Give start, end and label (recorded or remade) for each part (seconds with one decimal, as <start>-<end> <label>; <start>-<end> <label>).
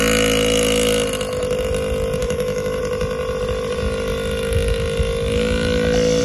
0.0-2.2 recorded; 2.2-2.8 remade; 2.8-6.2 recorded